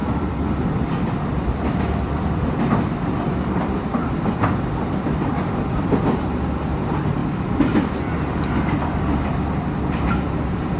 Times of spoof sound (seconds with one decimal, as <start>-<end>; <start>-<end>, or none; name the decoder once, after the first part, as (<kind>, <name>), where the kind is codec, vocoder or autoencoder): 0.0-2.6 (vocoder, BigVGAN v2); 3.9-6.0